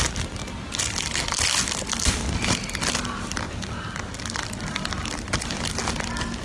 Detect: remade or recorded recorded